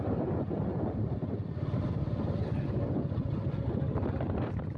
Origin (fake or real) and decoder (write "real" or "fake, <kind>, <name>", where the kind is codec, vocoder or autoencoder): fake, vocoder, BigVGAN v2